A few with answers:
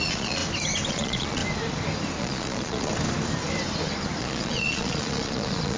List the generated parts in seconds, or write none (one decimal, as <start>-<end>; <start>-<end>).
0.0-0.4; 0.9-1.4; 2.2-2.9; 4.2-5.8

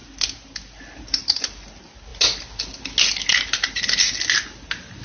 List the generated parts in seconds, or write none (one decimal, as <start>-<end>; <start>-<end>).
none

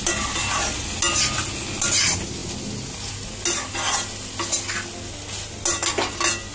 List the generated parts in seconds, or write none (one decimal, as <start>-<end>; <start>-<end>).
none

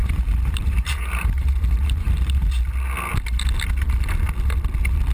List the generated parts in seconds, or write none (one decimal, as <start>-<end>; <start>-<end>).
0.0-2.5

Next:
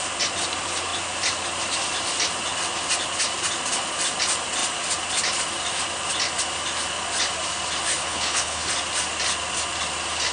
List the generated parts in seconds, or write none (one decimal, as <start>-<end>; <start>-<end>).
7.9-8.7

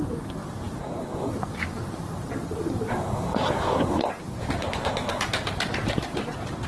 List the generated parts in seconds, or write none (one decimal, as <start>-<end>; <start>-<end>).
0.8-1.3; 2.9-4.1; 4.6-5.2

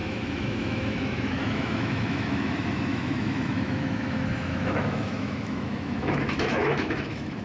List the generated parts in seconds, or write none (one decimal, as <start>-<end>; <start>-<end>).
0.0-7.4

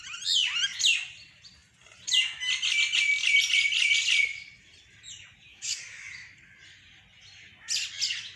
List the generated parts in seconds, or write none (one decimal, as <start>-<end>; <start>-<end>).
5.5-6.1